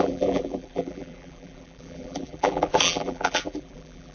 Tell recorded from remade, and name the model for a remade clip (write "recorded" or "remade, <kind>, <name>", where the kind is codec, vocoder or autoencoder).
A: remade, vocoder, BigVGAN v2